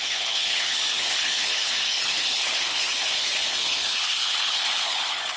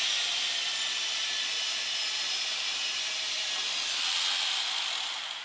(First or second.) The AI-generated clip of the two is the first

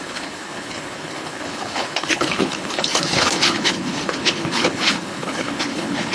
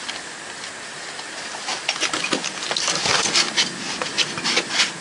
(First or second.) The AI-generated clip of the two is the first